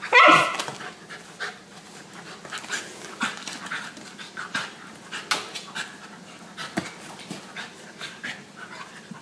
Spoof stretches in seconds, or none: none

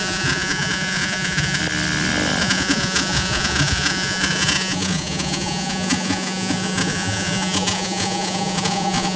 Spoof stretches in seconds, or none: 0.0-1.6 (vocoder, Vocos); 2.4-9.2

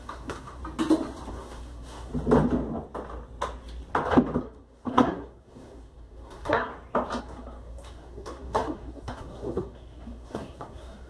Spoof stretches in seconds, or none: 0.0-0.6 (codec, SNAC); 1.3-2.1; 4.4-6.7; 7.2-11.1

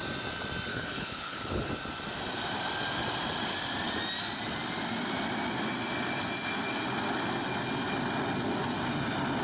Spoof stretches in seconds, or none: 0.7-1.7 (codec, HILCodec)